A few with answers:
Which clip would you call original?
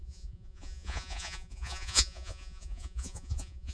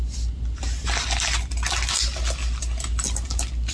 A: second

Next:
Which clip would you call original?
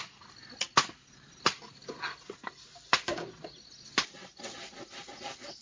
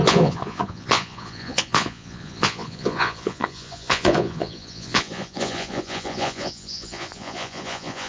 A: first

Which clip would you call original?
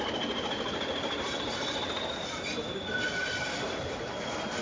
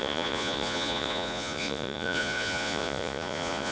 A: first